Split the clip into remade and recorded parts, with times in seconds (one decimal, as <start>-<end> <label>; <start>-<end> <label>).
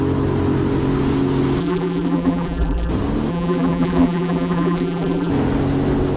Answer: 0.0-1.6 recorded; 1.6-2.9 remade; 2.9-3.3 recorded; 3.3-5.3 remade; 5.3-6.2 recorded